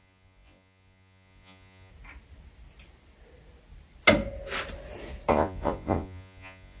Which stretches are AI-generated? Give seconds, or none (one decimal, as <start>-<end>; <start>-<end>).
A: 0.0-1.9; 5.3-6.8